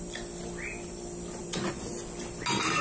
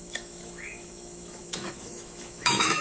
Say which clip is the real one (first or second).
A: first